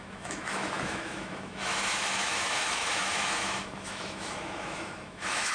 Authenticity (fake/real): fake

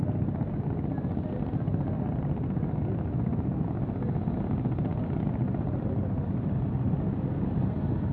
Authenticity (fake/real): real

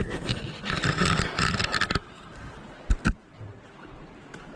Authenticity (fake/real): real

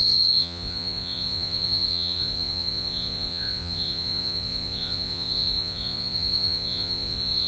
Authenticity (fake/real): fake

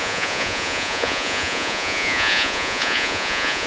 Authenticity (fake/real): fake